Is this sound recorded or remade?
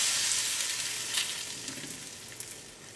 recorded